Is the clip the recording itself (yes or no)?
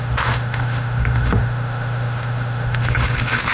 no